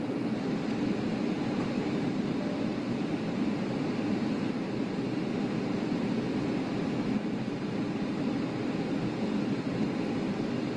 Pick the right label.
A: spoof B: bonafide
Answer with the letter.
B